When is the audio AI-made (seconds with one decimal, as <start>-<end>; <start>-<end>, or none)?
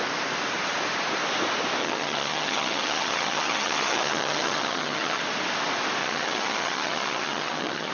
1.8-5.2; 6.0-7.9